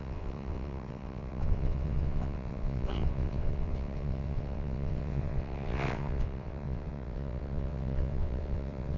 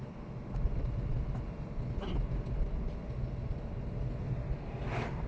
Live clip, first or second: second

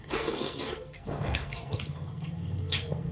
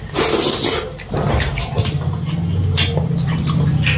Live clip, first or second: second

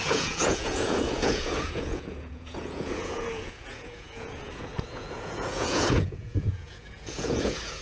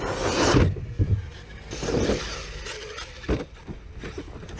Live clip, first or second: second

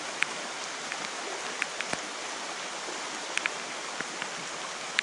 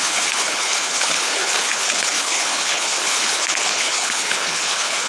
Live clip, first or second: first